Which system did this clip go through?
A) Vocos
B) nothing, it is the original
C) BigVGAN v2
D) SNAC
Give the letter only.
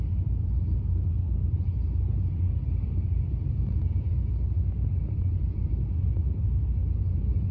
B